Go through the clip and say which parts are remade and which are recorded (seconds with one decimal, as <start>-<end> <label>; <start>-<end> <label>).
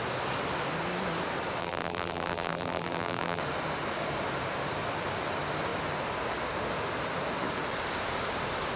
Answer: 0.0-1.6 recorded; 1.6-3.4 remade; 3.4-8.8 recorded